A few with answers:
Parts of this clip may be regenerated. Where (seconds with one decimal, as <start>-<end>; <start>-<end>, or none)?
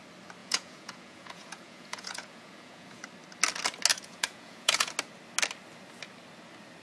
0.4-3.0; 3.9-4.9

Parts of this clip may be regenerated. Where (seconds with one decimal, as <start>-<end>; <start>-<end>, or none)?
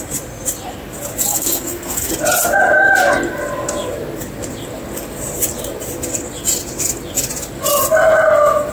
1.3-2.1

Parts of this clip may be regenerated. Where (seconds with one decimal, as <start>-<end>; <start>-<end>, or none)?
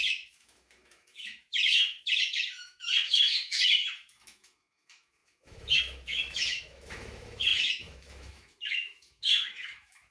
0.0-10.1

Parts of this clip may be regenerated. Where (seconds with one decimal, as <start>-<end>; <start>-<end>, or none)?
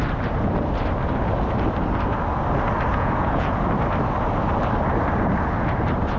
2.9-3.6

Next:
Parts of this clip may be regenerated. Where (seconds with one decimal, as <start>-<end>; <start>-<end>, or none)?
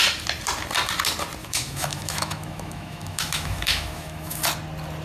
1.4-4.4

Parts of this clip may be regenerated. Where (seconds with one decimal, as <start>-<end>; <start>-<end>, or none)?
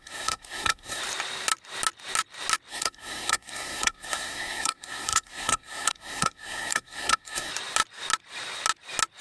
0.0-1.0; 2.7-7.5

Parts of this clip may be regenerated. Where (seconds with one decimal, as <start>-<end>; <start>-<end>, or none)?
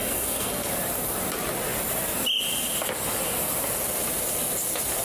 0.0-0.7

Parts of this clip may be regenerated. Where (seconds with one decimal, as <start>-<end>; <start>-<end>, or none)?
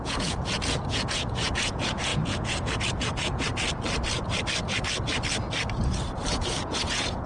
0.0-3.5; 6.3-7.3